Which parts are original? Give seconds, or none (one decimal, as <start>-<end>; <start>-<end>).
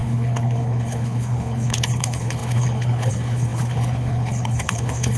none